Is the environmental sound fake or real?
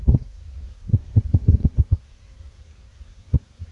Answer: fake